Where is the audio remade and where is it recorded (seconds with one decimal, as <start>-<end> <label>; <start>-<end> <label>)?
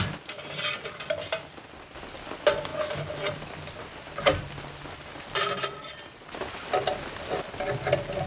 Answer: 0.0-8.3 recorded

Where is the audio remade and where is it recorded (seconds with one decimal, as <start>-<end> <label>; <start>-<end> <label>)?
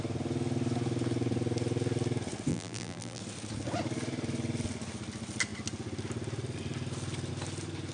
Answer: 0.0-2.5 recorded; 2.5-3.2 remade; 3.2-7.9 recorded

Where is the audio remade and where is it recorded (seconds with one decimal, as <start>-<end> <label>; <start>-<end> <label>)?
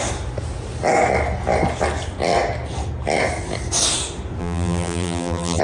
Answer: 0.0-4.4 recorded; 4.4-5.6 remade